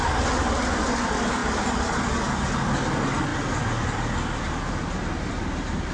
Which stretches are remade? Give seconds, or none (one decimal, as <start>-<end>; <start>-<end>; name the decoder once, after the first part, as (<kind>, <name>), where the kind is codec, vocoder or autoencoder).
none